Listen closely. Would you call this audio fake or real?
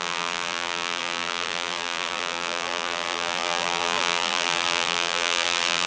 fake